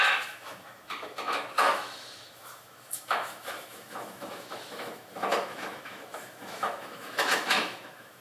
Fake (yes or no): yes